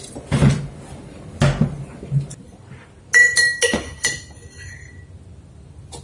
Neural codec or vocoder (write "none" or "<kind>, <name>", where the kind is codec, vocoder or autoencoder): none